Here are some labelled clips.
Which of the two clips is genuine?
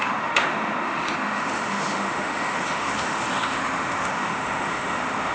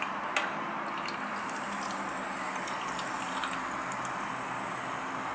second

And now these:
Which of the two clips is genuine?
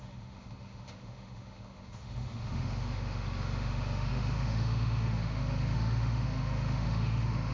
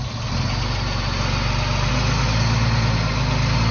second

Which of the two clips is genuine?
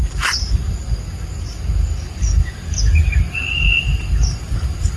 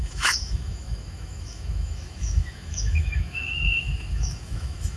first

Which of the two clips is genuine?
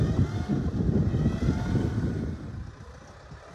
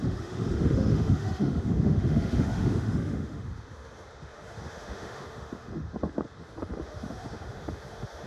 first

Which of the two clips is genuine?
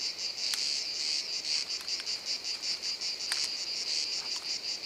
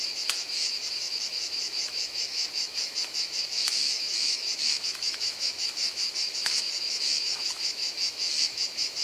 first